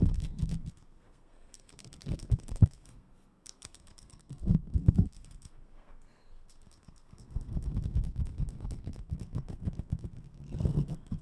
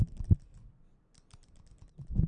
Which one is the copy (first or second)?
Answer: first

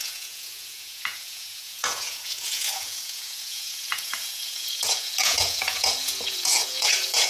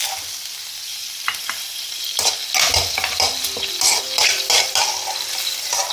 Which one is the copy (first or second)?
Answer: first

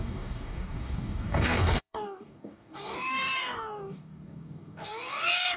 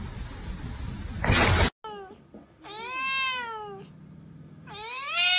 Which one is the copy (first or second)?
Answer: first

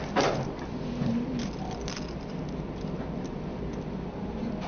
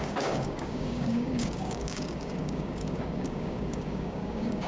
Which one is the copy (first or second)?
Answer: second